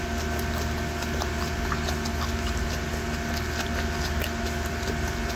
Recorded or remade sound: recorded